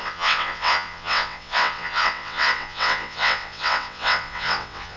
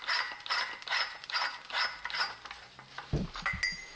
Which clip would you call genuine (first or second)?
second